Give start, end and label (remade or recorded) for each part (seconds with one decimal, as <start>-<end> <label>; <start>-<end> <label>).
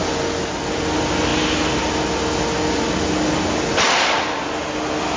0.0-5.2 recorded